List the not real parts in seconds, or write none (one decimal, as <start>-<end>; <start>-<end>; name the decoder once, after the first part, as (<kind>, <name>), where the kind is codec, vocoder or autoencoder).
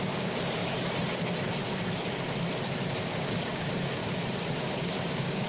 0.0-0.6 (codec, DAC); 3.3-4.0; 4.6-5.5